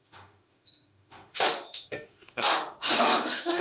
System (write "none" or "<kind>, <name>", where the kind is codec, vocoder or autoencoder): autoencoder, DAC-VAE